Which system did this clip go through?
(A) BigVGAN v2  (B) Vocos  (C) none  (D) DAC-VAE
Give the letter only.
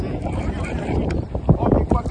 C